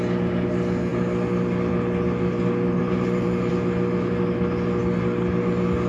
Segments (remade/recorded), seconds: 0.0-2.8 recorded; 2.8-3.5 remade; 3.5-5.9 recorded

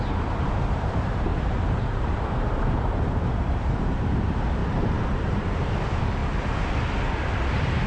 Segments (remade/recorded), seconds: 0.0-6.2 remade; 6.2-7.5 recorded; 7.5-7.9 remade

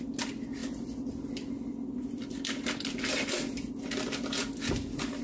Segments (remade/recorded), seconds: 0.0-0.6 recorded; 0.6-3.7 remade; 3.7-5.2 recorded

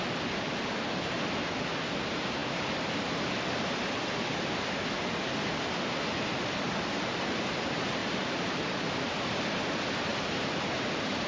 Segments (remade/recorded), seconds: 0.0-2.4 recorded; 2.4-3.3 remade; 3.3-8.0 recorded; 8.0-9.3 remade; 9.3-10.1 recorded; 10.1-10.7 remade; 10.7-11.3 recorded

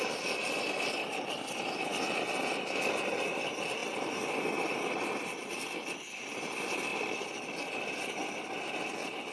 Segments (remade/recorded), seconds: 0.0-6.9 recorded; 6.9-7.9 remade; 7.9-9.3 recorded